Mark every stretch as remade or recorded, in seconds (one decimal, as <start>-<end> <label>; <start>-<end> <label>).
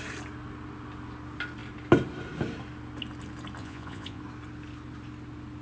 0.0-3.6 recorded; 3.6-4.2 remade; 4.2-5.6 recorded